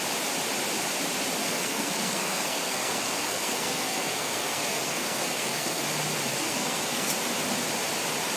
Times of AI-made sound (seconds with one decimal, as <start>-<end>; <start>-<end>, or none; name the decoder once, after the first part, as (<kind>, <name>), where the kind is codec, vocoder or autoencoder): 1.4-5.8 (codec, SNAC); 6.3-7.1